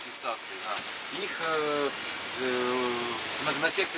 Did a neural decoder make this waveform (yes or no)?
no